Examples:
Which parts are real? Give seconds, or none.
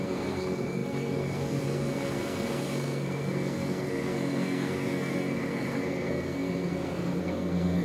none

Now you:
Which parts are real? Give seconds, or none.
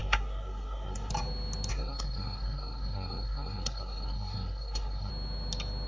1.1-1.7; 5.1-5.9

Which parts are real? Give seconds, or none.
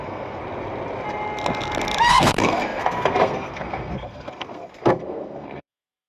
0.4-2.1